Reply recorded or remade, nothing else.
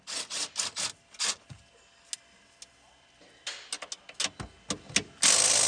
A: recorded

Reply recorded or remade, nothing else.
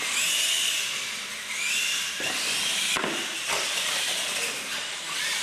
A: recorded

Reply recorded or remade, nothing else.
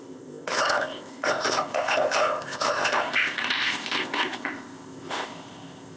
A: remade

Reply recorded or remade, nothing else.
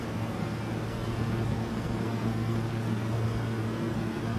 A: remade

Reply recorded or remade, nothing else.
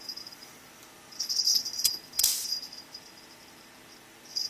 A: remade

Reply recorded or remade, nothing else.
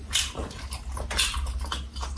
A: remade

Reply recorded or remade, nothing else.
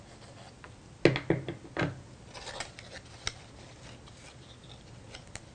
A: recorded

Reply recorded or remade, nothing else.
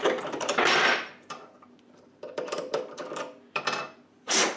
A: remade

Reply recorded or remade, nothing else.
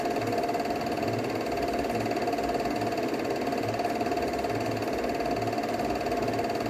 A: recorded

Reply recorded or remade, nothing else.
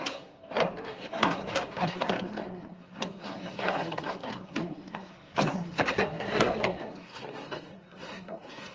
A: remade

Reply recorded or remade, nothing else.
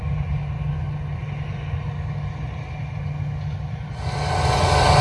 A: recorded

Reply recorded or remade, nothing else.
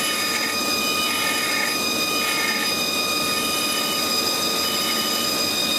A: recorded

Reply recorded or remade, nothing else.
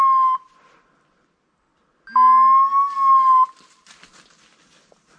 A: recorded